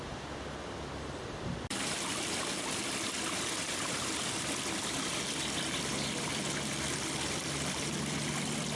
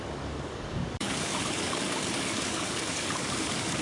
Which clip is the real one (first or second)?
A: first